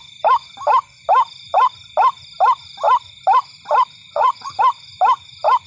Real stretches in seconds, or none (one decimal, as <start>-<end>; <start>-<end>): 0.0-4.0; 4.6-5.7